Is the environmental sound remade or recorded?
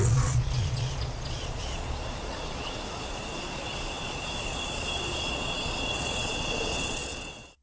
remade